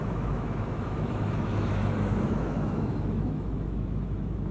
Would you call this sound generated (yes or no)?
yes